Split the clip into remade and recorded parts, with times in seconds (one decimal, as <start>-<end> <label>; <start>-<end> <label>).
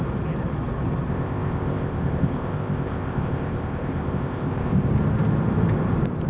0.0-1.1 recorded; 1.1-4.9 remade; 4.9-6.3 recorded